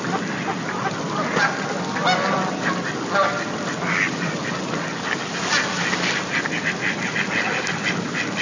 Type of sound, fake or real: real